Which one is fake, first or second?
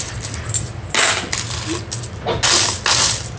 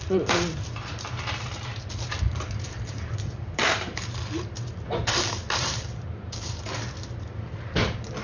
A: second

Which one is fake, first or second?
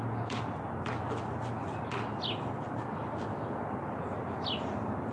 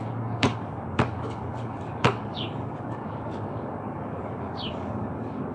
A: second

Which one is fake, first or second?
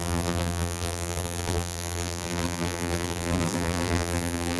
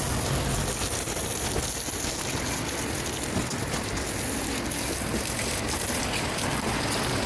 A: first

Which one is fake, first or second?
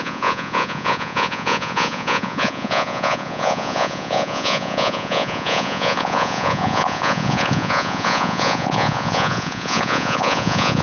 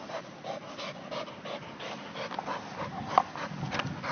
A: first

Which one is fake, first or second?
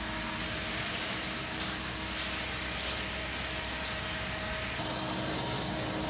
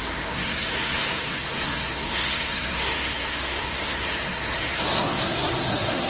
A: second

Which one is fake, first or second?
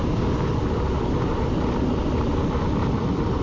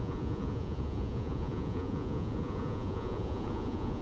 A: second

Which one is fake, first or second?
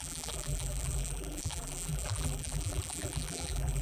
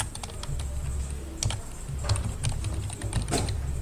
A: first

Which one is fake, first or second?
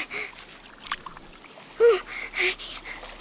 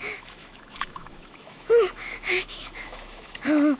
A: second